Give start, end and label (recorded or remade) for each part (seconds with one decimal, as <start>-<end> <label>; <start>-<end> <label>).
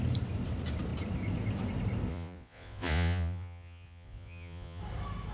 0.0-2.1 recorded; 2.1-4.8 remade; 4.8-5.3 recorded